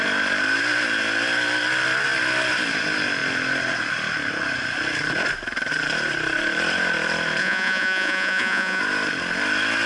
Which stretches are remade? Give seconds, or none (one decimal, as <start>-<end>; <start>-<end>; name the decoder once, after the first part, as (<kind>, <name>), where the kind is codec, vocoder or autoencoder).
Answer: 7.4-8.8 (vocoder, Vocos)